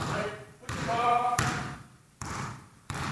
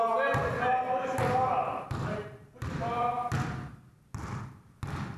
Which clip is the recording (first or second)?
second